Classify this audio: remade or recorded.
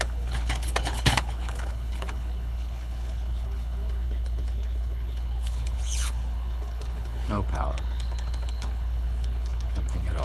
remade